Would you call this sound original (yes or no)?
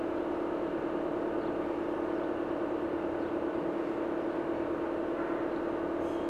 yes